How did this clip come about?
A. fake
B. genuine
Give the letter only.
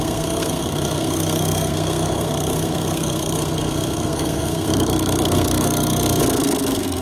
A